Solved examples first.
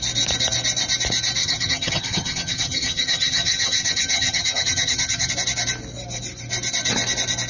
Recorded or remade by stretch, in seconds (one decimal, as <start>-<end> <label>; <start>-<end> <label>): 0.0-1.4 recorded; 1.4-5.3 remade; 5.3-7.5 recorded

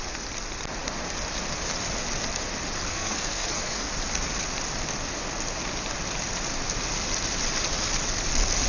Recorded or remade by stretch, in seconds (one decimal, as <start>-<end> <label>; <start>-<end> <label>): 0.0-2.9 recorded; 2.9-3.9 remade; 3.9-8.7 recorded

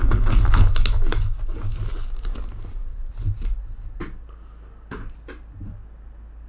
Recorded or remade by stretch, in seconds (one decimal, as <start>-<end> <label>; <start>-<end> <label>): 0.0-1.7 recorded; 1.7-4.2 remade; 4.2-6.5 recorded

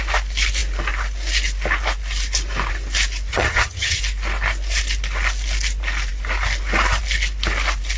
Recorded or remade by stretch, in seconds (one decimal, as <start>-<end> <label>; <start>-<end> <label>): 0.0-3.3 recorded; 3.3-4.0 remade; 4.0-8.0 recorded

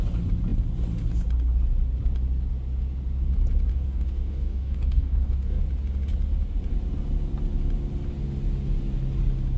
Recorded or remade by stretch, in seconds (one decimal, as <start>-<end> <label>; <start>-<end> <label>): 0.0-3.7 recorded; 3.7-5.6 remade; 5.6-9.6 recorded

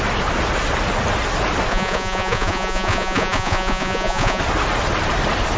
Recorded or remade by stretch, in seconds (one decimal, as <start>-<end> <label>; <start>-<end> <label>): 0.0-1.7 recorded; 1.7-4.4 remade; 4.4-5.6 recorded

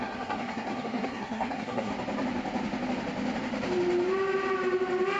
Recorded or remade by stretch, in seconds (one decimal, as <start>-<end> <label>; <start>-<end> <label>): 0.0-1.9 remade; 1.9-5.2 recorded

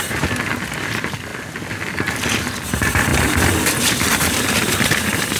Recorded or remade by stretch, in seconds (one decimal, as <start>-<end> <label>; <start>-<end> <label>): 0.0-5.4 recorded